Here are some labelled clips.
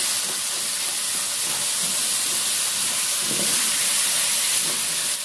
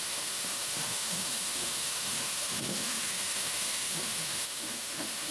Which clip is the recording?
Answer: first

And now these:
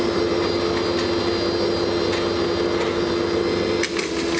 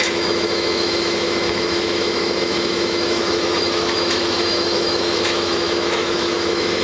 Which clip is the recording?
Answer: first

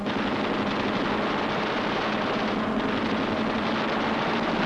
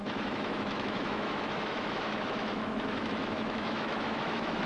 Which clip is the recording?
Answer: first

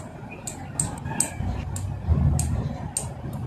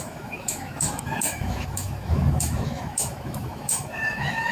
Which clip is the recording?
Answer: first